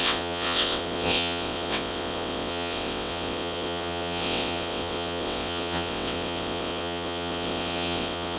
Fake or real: fake